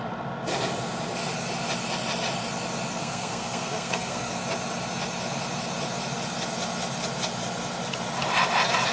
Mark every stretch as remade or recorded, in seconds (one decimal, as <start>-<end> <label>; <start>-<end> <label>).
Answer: 0.0-3.0 recorded; 3.0-4.3 remade; 4.3-8.9 recorded